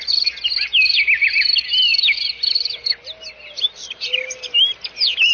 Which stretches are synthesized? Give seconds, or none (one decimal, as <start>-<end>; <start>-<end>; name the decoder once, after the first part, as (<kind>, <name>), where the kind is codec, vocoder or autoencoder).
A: none